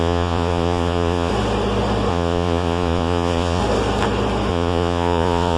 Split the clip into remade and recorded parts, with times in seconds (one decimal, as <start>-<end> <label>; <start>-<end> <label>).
0.0-1.3 remade; 1.3-2.1 recorded; 2.1-3.6 remade; 3.6-4.5 recorded; 4.5-5.6 remade